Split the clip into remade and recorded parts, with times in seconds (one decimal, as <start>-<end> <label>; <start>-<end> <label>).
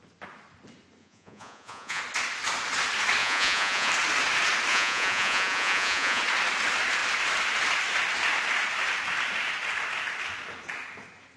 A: 0.0-1.0 recorded; 1.0-2.0 remade; 2.0-3.2 recorded; 3.2-3.9 remade; 3.9-4.7 recorded; 4.7-6.2 remade; 6.2-11.4 recorded